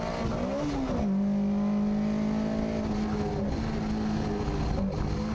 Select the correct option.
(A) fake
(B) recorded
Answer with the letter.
B